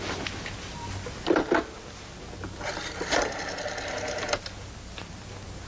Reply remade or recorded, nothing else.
recorded